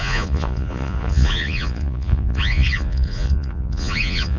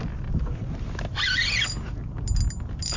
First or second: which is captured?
second